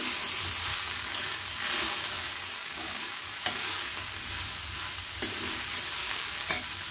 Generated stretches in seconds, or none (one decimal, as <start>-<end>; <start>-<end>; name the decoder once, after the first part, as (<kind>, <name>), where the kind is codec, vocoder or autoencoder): 0.7-4.2 (codec, DAC); 6.0-6.5